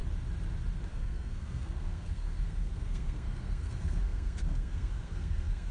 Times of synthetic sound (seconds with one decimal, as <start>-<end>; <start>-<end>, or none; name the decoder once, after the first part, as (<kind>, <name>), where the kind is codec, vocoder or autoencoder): 0.9-5.7 (codec, SNAC)